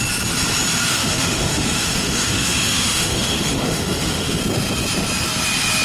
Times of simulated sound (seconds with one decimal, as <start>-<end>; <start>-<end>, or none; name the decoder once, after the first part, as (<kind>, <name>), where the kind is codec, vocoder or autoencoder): 0.9-4.4 (autoencoder, DAC-VAE)